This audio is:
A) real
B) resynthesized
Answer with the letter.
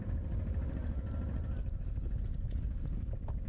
A